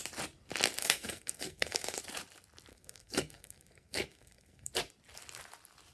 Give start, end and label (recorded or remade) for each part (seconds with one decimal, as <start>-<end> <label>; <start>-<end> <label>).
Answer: 0.0-0.8 recorded; 0.8-2.0 remade; 2.0-2.7 recorded; 2.7-4.7 remade; 4.7-5.9 recorded